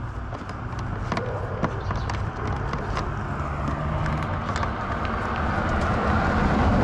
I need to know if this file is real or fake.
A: real